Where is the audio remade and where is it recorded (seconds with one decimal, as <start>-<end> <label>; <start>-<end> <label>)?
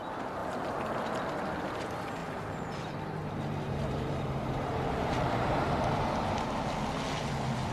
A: 0.0-2.2 recorded; 2.2-2.7 remade; 2.7-3.2 recorded; 3.2-5.6 remade; 5.6-7.7 recorded